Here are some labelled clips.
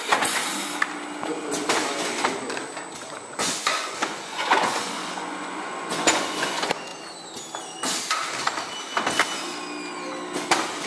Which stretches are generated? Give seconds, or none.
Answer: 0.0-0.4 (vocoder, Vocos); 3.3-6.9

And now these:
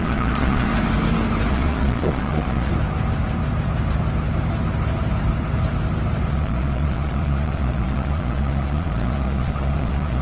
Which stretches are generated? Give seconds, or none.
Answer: 0.0-0.7 (vocoder, Vocos); 1.5-2.7; 6.3-10.2

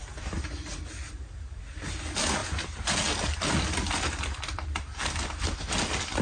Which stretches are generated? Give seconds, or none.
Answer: none

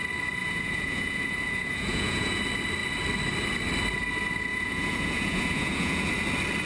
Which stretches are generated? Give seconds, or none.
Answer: 0.4-2.4 (vocoder, Vocos); 4.5-6.1

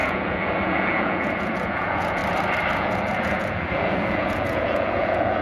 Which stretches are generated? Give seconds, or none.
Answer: 0.0-2.2 (vocoder, Vocos); 2.8-5.4

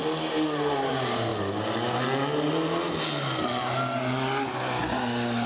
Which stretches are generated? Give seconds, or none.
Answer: none

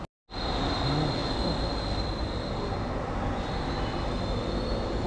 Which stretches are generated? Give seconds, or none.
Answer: none

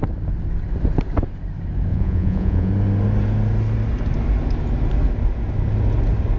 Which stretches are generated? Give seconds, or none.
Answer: 1.9-2.7 (vocoder, Vocos)